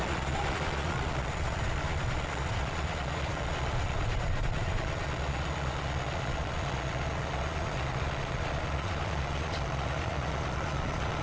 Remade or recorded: remade